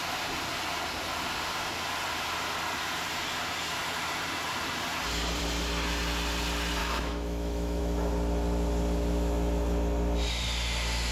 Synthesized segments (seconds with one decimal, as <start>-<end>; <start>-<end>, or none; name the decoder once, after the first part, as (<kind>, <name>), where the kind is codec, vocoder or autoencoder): 6.8-7.8 (autoencoder, DAC-VAE)